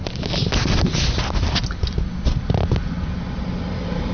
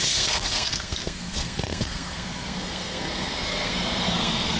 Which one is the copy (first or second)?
second